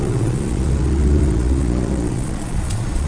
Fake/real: fake